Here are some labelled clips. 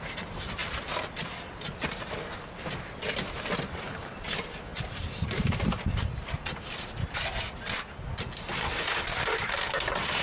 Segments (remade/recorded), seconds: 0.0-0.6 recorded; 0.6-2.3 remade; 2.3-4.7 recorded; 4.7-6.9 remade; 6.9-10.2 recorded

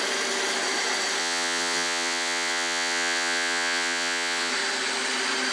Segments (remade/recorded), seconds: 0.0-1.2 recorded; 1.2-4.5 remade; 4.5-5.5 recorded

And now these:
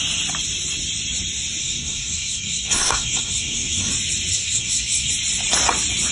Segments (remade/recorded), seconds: 0.0-1.6 recorded; 1.6-3.9 remade; 3.9-4.3 recorded; 4.3-5.1 remade; 5.1-6.1 recorded

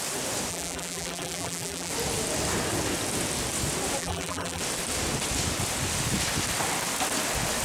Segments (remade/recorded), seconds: 0.0-0.5 recorded; 0.5-1.9 remade; 1.9-4.0 recorded; 4.0-4.6 remade; 4.6-7.6 recorded